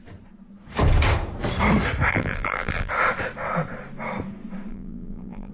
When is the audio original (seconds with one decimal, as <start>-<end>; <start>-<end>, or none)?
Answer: 0.0-2.1; 2.9-4.7